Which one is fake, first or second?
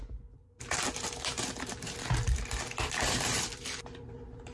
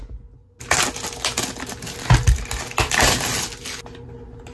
first